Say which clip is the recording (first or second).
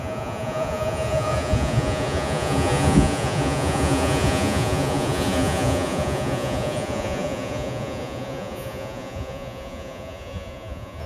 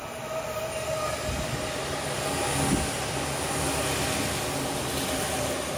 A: second